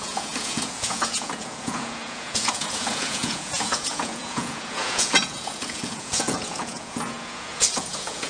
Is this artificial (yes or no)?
yes